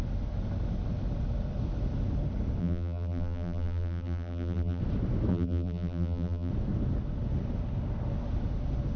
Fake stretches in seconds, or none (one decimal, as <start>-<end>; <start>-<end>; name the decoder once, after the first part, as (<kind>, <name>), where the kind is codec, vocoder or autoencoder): 2.6-4.8 (vocoder, BigVGAN v2); 5.3-6.5

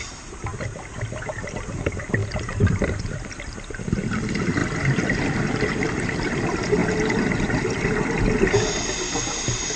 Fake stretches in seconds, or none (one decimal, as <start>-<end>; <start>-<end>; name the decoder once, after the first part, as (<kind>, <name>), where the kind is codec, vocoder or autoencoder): 0.0-4.6 (vocoder, BigVGAN v2); 5.7-9.8

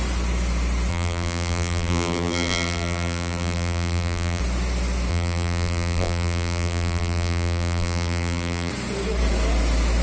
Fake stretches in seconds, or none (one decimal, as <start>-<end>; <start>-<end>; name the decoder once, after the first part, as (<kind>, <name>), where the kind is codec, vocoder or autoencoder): 0.9-4.4 (vocoder, BigVGAN v2); 5.1-8.7

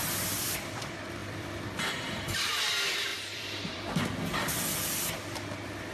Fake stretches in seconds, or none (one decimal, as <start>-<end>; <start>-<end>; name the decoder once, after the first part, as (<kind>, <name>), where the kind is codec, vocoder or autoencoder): 1.2-2.6 (vocoder, BigVGAN v2); 3.1-3.8

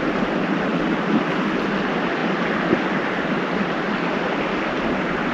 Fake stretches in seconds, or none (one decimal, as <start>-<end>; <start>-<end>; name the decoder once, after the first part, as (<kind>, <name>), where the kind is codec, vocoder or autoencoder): 0.7-1.3 (vocoder, BigVGAN v2); 2.2-4.6

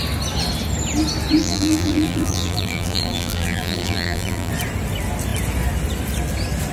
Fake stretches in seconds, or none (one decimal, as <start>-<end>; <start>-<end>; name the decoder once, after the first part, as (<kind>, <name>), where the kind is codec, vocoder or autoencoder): 1.4-4.5 (vocoder, BigVGAN v2)